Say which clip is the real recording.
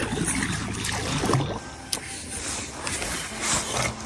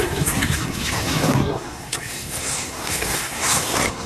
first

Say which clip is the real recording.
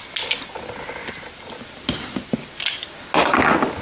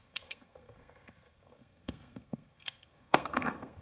first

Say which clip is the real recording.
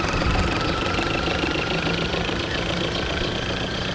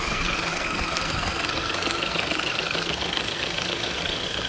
first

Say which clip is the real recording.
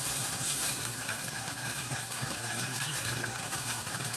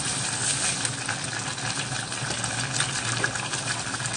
second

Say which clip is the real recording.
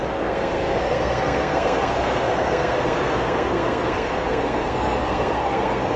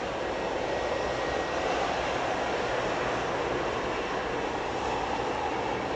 second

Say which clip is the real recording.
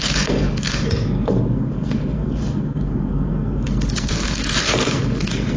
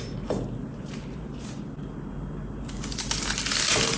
second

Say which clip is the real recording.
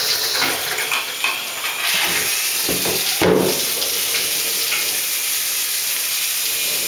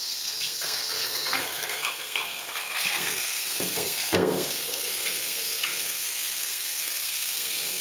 first